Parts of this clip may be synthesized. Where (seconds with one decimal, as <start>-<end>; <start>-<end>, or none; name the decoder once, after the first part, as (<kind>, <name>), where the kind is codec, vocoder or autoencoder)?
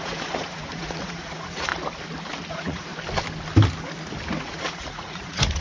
0.0-1.7 (vocoder, Vocos); 2.5-2.9; 4.4-5.6